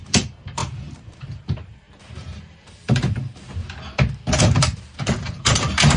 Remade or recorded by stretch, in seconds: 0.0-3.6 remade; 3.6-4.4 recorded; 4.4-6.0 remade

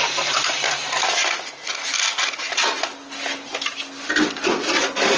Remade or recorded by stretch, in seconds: 0.0-5.2 recorded

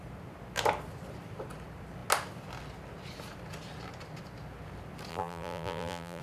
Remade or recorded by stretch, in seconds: 0.0-5.1 recorded; 5.1-6.2 remade

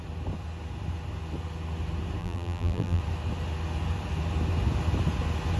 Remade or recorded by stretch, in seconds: 0.0-2.2 recorded; 2.2-3.0 remade; 3.0-5.6 recorded

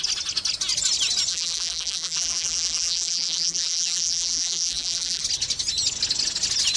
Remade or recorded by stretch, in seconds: 0.0-1.3 recorded; 1.3-5.2 remade; 5.2-6.8 recorded

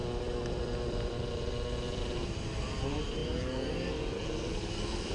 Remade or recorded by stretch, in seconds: 0.0-5.1 recorded

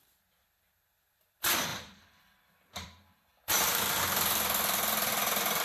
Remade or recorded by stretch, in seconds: 0.0-1.7 recorded; 1.7-5.1 remade; 5.1-5.6 recorded

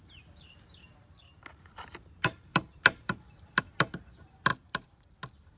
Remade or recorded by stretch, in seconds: 0.0-2.5 recorded; 2.5-3.6 remade; 3.6-5.6 recorded